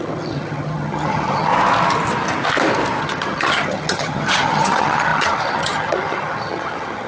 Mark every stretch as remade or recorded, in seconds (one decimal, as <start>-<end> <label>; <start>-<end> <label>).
0.0-1.5 remade; 1.5-3.0 recorded; 3.0-7.1 remade